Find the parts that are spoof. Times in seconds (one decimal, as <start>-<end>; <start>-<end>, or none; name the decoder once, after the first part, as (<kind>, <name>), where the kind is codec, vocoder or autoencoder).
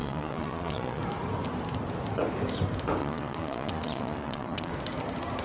0.0-1.0 (vocoder, Vocos); 3.0-4.7